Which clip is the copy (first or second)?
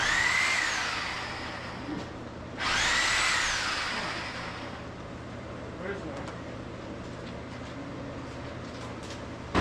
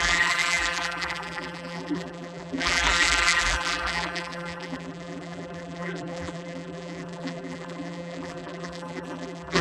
second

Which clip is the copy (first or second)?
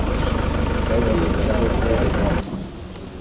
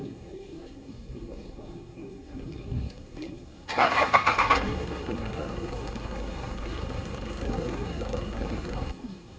second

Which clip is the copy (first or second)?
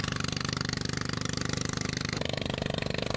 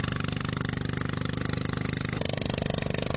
first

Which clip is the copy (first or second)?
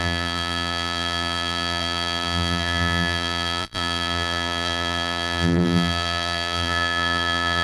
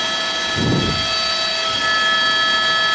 first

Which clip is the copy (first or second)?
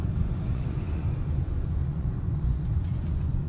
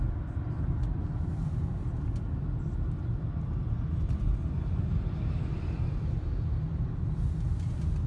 first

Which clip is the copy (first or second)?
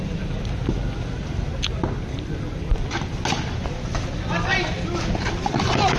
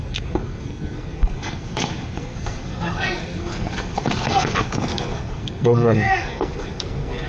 second